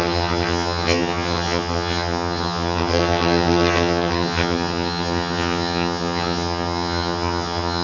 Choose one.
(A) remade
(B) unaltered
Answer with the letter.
A